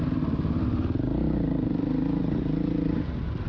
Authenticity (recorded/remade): recorded